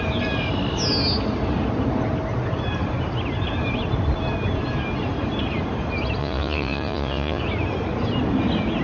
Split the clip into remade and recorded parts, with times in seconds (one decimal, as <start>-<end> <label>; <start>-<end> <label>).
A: 0.0-6.2 recorded; 6.2-7.4 remade; 7.4-8.8 recorded